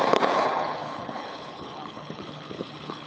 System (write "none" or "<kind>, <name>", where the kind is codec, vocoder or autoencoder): codec, HILCodec